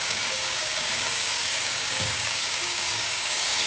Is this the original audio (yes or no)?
no